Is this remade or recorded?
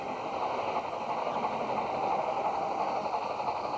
recorded